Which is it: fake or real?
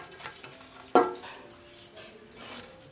real